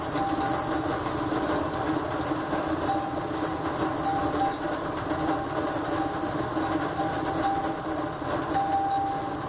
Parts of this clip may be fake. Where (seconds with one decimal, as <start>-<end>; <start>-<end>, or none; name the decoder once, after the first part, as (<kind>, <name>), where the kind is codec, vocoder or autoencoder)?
4.2-4.8 (vocoder, BigVGAN v2)